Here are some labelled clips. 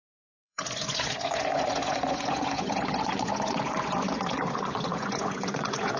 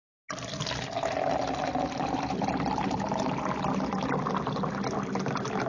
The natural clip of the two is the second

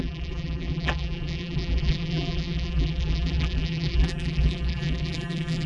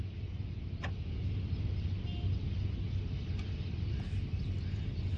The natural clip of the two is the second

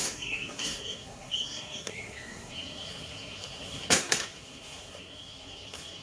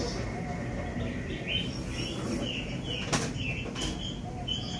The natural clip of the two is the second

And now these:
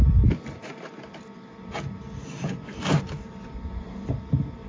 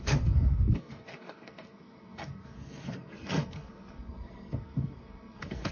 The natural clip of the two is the first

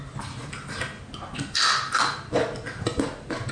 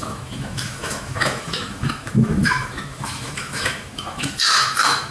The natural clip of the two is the first